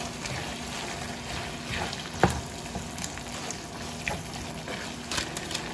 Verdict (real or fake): real